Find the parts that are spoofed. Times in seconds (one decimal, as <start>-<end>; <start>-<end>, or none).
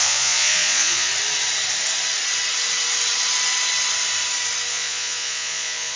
0.0-1.1; 4.7-6.0